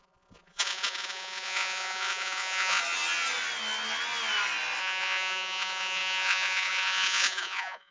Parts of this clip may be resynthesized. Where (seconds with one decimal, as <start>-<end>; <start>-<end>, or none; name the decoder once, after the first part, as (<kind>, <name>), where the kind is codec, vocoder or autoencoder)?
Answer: 0.0-2.8 (vocoder, Vocos); 4.8-7.9